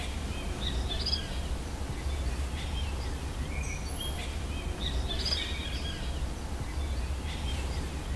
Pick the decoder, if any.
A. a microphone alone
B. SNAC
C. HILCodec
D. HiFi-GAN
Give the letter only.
A